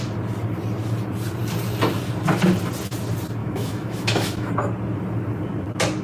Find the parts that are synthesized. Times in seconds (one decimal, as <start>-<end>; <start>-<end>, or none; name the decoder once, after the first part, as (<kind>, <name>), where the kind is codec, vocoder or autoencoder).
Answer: 3.4-4.5 (autoencoder, DAC-VAE)